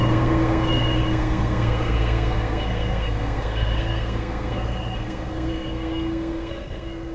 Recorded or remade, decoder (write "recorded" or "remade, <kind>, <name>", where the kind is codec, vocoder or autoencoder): remade, codec, SNAC